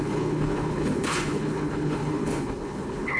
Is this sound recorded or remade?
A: remade